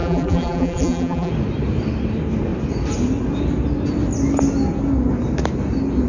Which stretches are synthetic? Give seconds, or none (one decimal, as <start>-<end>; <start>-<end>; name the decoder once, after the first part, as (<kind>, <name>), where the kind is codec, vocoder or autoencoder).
0.0-1.3 (vocoder, BigVGAN v2)